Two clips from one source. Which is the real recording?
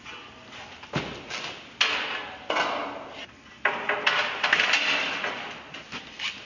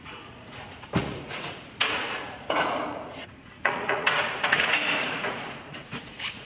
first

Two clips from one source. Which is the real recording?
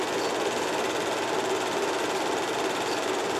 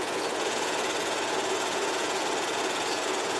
first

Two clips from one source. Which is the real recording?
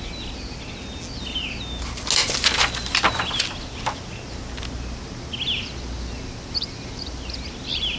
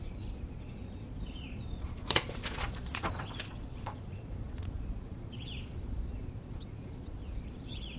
first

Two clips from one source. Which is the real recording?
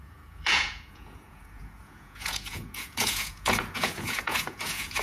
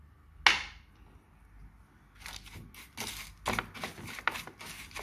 second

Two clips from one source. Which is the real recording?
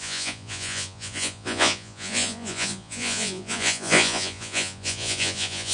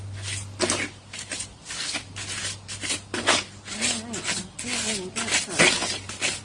second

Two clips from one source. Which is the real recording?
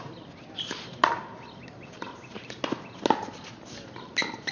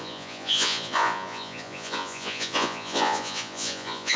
first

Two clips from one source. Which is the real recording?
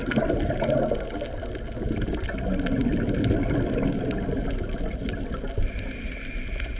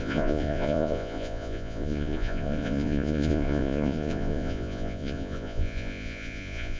first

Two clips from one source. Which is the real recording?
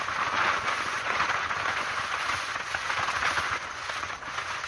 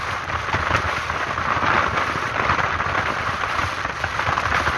second